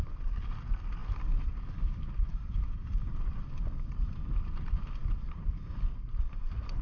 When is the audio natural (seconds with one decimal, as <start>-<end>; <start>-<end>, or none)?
0.0-1.0; 3.2-6.8

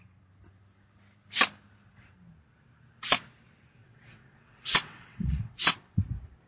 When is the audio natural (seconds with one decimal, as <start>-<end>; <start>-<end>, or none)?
0.0-3.8; 6.0-6.5

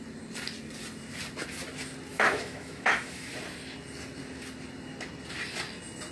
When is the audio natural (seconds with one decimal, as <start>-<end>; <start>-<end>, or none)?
0.0-2.1; 3.3-6.1

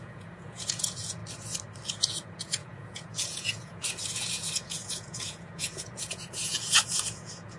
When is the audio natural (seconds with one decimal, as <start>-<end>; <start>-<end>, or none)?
1.2-1.9

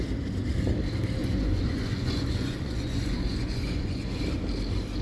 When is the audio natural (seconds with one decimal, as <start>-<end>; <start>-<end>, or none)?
0.0-1.2; 4.2-5.0

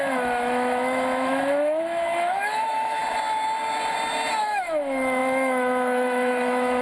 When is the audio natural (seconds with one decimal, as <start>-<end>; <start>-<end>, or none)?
3.0-4.4